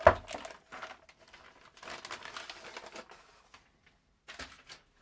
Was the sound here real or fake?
real